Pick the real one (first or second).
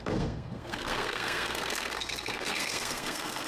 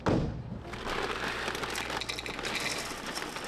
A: second